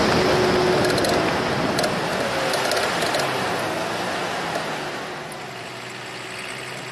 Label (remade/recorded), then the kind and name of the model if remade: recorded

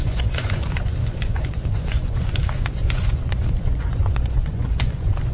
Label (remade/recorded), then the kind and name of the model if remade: remade, vocoder, Vocos